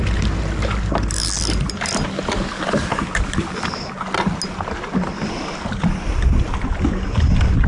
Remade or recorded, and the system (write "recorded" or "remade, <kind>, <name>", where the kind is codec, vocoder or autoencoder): recorded